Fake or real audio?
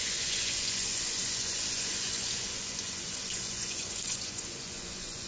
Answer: fake